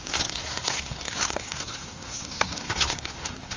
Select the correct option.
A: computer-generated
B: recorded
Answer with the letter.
A